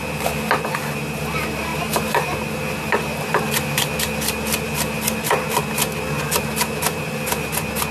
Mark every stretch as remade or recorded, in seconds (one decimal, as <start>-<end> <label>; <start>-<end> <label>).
0.0-1.7 recorded; 1.7-5.2 remade; 5.2-7.9 recorded